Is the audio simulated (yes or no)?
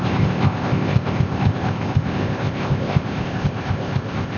yes